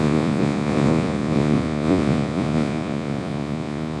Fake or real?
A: fake